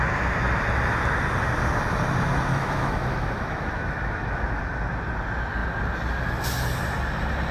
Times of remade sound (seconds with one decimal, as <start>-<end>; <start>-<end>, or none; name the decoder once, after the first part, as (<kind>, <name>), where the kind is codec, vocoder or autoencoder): 2.5-4.6 (autoencoder, DAC-VAE)